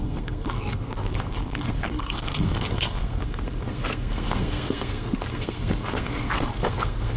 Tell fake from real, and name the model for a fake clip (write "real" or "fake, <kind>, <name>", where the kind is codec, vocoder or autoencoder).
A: fake, codec, SNAC